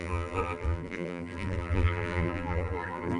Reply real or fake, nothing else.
fake